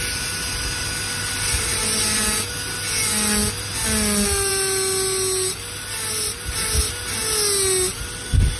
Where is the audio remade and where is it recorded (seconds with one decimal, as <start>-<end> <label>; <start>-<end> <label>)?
0.0-8.6 recorded